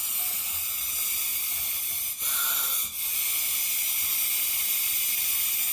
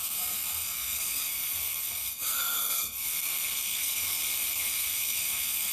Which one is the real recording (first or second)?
first